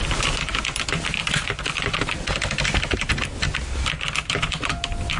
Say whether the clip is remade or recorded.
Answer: recorded